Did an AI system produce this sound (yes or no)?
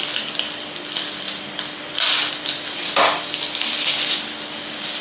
no